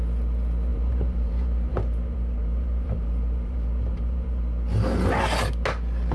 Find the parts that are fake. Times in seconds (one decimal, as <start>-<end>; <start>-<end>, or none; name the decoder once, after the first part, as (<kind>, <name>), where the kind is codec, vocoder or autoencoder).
0.7-4.4 (vocoder, BigVGAN v2)